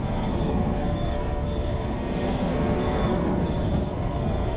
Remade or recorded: remade